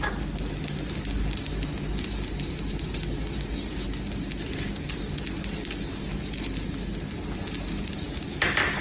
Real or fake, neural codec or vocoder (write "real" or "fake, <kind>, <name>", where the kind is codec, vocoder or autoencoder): real